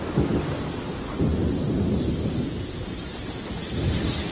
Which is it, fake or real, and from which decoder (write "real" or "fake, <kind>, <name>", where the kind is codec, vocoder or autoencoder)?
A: real